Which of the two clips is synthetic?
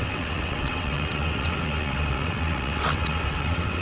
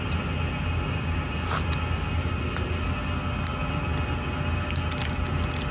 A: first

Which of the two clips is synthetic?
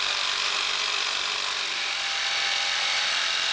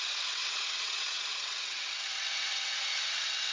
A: second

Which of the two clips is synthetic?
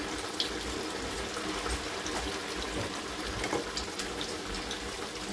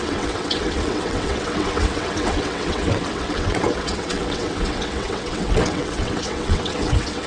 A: second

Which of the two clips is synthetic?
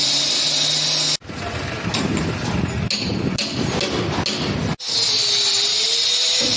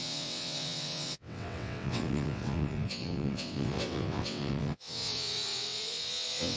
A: second